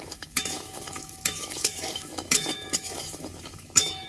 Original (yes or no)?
no